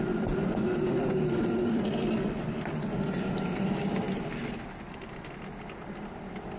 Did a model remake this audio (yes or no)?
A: yes